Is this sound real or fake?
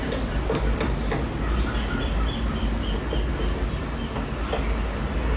real